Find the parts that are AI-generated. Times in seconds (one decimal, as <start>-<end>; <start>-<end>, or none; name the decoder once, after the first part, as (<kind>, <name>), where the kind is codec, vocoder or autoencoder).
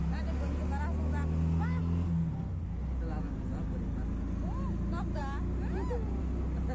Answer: none